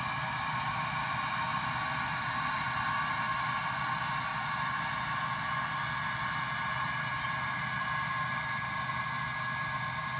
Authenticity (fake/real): real